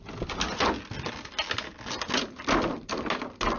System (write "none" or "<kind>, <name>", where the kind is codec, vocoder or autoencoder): none